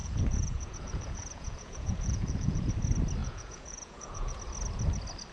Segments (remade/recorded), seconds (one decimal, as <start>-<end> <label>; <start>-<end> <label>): 0.0-2.7 remade; 2.7-3.2 recorded; 3.2-4.4 remade; 4.4-5.3 recorded